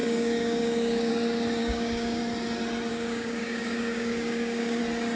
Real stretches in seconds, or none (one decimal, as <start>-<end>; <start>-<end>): 1.1-1.6; 2.2-2.9; 4.8-5.2